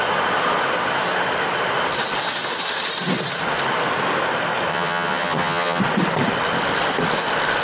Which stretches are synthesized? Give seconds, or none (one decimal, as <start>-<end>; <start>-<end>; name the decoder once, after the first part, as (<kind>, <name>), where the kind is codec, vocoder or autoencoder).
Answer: 4.7-5.8 (vocoder, HiFi-GAN)